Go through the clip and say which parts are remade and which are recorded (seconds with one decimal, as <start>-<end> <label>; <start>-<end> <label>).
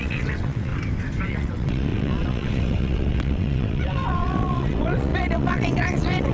0.0-0.7 remade; 0.7-1.3 recorded; 1.3-6.3 remade